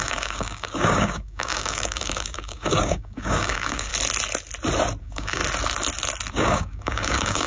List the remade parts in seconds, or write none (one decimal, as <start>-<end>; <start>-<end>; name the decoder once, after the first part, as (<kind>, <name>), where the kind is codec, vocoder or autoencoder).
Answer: 0.0-3.9 (codec, DAC); 5.0-5.4; 6.3-7.5